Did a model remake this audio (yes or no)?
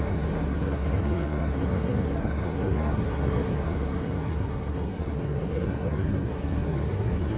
yes